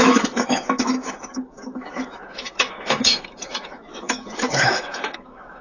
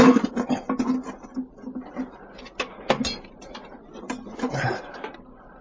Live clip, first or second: second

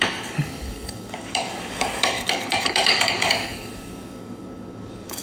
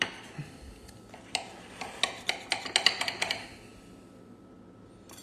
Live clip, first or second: second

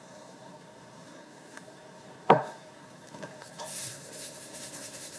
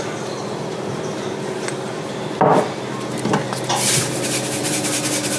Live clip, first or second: second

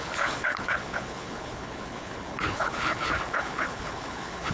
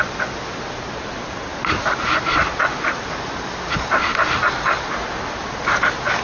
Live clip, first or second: second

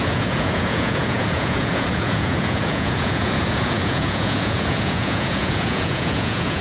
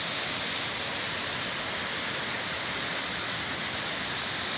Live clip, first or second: second